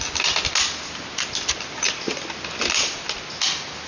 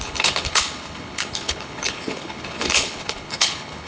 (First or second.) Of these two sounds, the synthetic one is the second